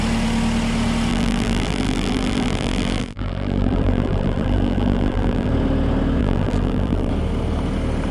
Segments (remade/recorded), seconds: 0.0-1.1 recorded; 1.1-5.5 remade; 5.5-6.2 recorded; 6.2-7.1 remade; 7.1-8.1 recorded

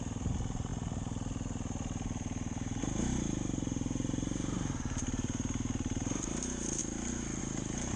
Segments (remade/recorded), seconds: 0.0-6.8 remade; 6.8-7.4 recorded; 7.4-8.0 remade

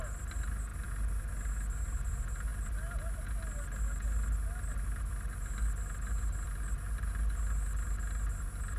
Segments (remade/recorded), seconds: 0.0-8.8 recorded

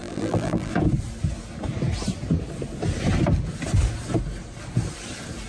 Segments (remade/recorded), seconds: 0.0-0.7 remade; 0.7-5.5 recorded

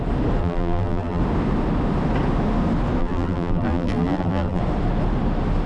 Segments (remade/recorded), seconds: 0.0-0.4 recorded; 0.4-1.2 remade; 1.2-3.0 recorded; 3.0-4.6 remade; 4.6-5.7 recorded